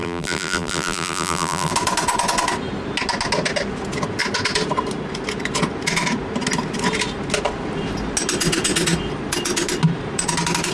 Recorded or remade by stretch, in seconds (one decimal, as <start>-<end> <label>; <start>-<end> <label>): 0.0-1.7 remade; 1.7-10.7 recorded